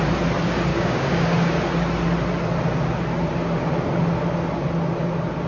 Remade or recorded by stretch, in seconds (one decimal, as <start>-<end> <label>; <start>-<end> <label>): 0.0-0.7 recorded; 0.7-1.5 remade; 1.5-5.5 recorded